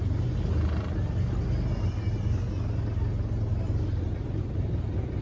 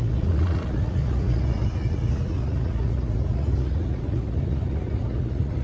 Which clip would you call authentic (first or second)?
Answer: first